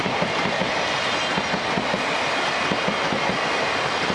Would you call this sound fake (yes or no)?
no